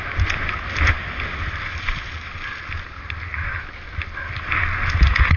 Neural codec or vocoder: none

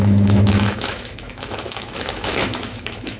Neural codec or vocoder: autoencoder, DAC-VAE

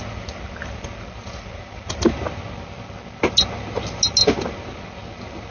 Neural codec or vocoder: none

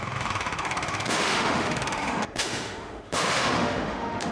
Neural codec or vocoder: autoencoder, DAC-VAE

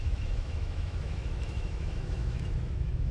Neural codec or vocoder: autoencoder, DAC-VAE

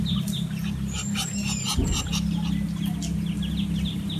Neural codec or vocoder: none